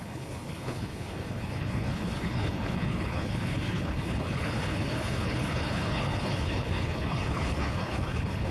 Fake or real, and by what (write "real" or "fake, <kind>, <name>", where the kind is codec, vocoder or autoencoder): fake, codec, HILCodec